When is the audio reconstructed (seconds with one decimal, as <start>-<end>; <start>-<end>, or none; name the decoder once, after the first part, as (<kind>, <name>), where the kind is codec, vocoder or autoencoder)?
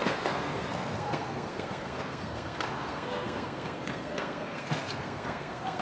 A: 0.0-5.8 (codec, SNAC)